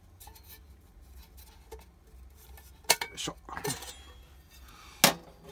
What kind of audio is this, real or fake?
real